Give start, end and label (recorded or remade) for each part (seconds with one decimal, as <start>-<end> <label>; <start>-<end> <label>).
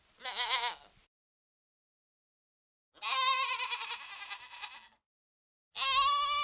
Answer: 0.0-6.4 recorded